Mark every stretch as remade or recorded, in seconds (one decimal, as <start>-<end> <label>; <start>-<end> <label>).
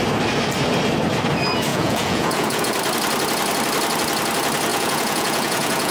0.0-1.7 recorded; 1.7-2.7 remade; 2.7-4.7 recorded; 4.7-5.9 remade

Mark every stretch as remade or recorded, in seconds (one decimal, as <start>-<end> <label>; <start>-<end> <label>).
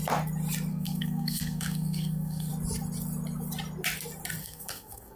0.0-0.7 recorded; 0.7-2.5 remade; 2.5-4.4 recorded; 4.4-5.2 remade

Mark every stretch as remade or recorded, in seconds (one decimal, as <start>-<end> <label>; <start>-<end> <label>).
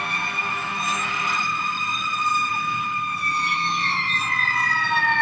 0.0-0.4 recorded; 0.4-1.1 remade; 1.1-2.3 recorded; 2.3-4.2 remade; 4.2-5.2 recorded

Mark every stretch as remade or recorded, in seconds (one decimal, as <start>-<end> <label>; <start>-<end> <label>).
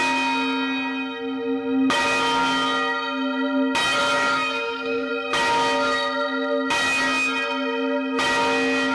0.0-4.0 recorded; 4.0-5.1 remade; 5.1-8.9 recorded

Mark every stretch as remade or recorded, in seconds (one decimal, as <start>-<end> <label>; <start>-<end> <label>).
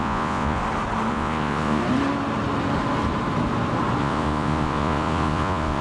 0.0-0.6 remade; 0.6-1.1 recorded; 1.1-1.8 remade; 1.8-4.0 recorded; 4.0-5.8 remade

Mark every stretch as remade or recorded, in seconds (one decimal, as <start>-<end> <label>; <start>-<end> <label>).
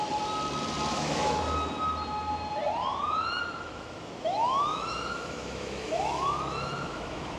0.0-0.9 recorded; 0.9-1.4 remade; 1.4-3.2 recorded; 3.2-7.4 remade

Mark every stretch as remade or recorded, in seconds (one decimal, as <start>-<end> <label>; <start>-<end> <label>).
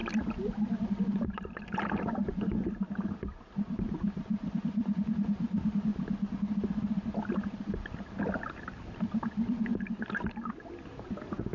0.0-0.9 recorded; 0.9-5.9 remade; 5.9-8.2 recorded; 8.2-9.7 remade; 9.7-11.5 recorded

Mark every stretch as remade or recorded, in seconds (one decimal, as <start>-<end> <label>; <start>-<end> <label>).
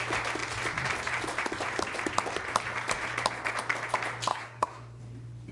0.0-4.3 recorded; 4.3-5.0 remade; 5.0-5.5 recorded